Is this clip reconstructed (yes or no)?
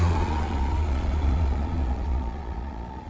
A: yes